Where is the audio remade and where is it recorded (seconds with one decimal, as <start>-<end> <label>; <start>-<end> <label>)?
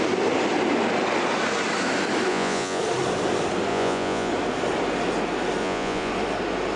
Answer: 0.0-2.3 recorded; 2.3-2.8 remade; 2.8-3.7 recorded; 3.7-4.3 remade; 4.3-5.6 recorded; 5.6-6.1 remade; 6.1-6.8 recorded